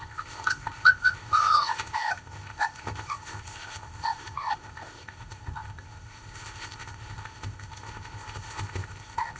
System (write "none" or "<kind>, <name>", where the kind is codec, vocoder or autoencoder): codec, ZipCodec